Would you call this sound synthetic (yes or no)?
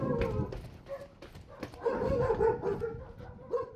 no